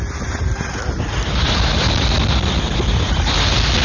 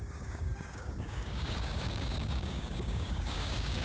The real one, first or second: first